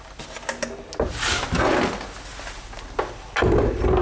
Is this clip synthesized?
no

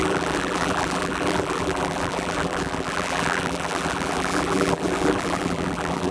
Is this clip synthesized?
yes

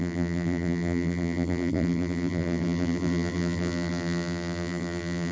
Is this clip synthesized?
yes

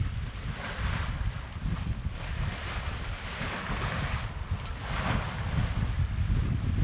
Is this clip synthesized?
no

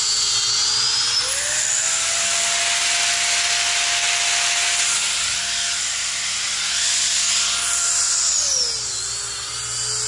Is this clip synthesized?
no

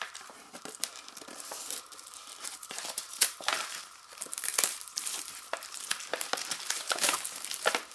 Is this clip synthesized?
yes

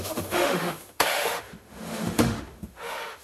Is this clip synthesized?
yes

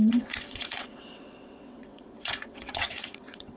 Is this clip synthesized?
yes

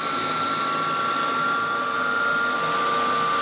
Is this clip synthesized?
no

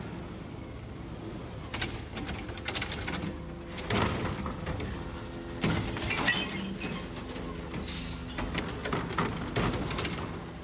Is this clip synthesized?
no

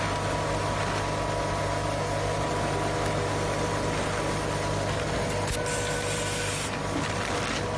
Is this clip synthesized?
no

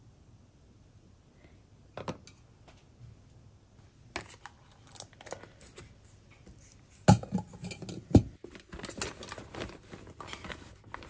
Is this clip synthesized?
no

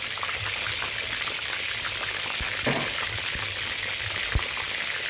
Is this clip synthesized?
no